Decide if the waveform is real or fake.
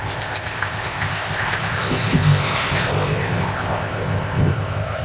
fake